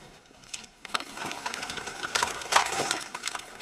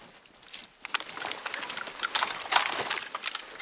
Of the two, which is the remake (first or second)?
first